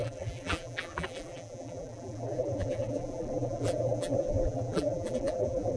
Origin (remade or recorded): remade